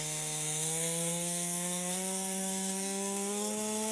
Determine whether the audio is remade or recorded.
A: remade